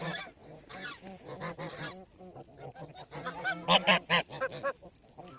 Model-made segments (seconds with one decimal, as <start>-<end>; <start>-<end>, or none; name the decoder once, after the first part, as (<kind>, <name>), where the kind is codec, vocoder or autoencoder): 0.4-1.4 (vocoder, Vocos)